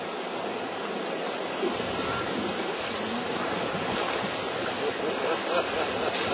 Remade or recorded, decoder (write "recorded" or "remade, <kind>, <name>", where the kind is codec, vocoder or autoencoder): recorded